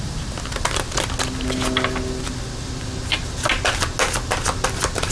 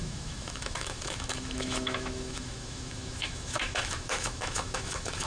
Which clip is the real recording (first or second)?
first